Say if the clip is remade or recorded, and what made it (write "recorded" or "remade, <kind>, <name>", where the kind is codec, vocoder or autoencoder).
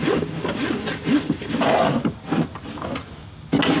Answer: recorded